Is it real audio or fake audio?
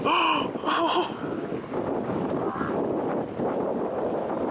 real